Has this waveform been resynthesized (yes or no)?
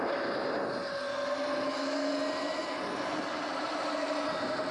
no